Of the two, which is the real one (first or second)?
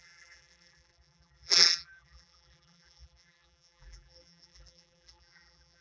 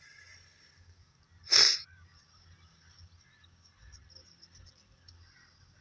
second